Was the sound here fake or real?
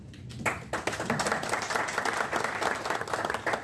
real